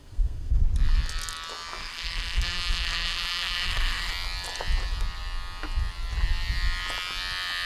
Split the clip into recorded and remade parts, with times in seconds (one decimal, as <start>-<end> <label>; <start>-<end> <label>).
0.0-0.6 remade; 0.6-1.8 recorded; 1.8-4.1 remade; 4.1-7.7 recorded